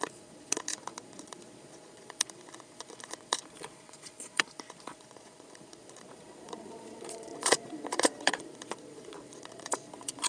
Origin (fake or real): fake